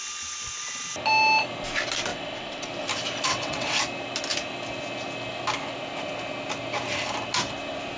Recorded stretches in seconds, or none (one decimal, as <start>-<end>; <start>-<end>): 0.0-2.1; 2.7-3.3; 3.8-8.0